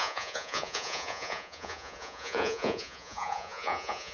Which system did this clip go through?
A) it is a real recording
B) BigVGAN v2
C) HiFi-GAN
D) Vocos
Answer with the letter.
D